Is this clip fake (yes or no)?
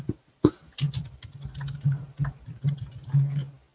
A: no